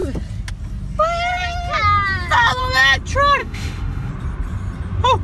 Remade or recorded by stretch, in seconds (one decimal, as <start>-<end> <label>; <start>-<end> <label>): 0.0-3.4 recorded; 3.4-4.1 remade; 4.1-5.2 recorded